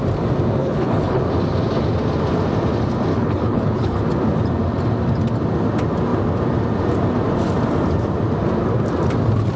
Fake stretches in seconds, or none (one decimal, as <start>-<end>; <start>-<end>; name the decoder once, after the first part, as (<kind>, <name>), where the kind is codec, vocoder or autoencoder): 0.6-1.2 (codec, HILCodec); 3.1-4.0